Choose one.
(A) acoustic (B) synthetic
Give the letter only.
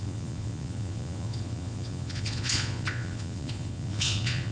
B